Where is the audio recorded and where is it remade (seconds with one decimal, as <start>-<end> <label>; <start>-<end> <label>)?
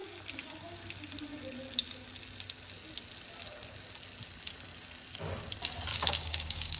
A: 0.0-5.9 recorded; 5.9-6.8 remade